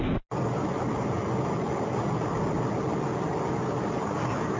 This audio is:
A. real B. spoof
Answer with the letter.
A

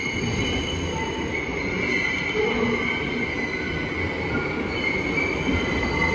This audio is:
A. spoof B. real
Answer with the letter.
B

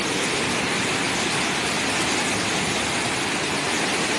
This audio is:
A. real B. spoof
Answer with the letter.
A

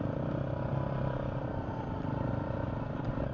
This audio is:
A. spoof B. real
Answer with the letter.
B